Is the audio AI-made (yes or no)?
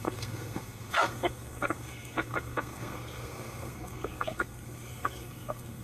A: yes